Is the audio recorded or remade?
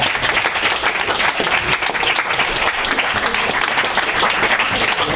recorded